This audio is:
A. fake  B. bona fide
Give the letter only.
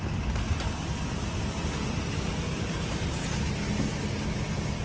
B